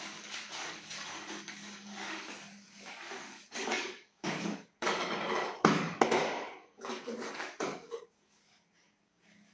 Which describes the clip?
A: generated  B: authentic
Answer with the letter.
A